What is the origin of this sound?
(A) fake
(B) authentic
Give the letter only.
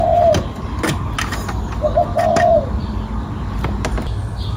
B